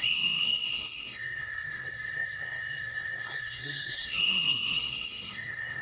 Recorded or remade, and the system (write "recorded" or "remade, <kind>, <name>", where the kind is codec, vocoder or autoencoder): remade, codec, SNAC